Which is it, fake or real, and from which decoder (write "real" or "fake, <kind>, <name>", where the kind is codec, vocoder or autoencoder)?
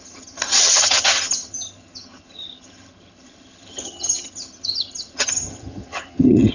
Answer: fake, vocoder, HiFi-GAN